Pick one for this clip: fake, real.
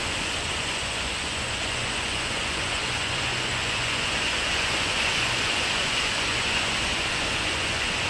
fake